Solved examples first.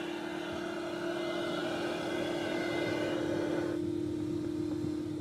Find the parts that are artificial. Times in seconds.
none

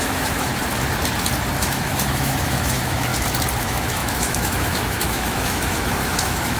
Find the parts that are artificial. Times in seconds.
0.0-0.5 (autoencoder, DAC-VAE); 1.6-3.1; 3.6-6.6

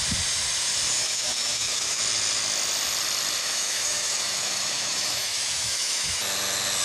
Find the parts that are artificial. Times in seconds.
1.0-2.0 (autoencoder, DAC-VAE); 3.4-6.2

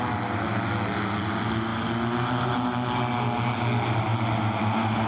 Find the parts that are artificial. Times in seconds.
none

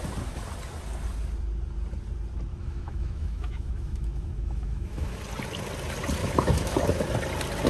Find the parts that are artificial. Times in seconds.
2.5-5.2 (autoencoder, DAC-VAE); 6.2-7.0